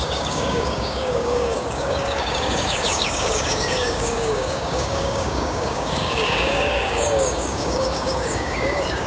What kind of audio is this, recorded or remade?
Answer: remade